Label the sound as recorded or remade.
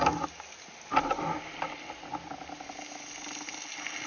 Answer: recorded